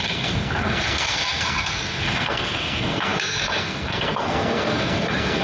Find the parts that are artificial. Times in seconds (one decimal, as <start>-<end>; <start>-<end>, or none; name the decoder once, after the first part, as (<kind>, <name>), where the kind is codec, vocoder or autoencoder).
0.0-5.4 (codec, SNAC)